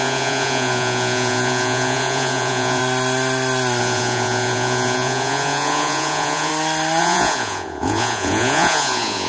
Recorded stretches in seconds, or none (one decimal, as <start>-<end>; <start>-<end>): 2.8-3.8; 6.5-7.0